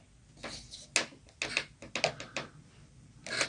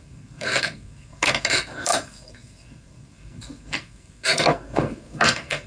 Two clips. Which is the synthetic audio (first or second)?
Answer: second